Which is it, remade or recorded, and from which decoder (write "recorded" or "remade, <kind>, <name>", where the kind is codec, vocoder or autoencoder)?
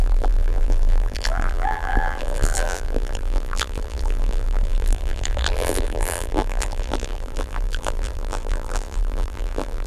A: remade, vocoder, BigVGAN v2